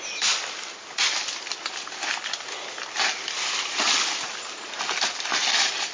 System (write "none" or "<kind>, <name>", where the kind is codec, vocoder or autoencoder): none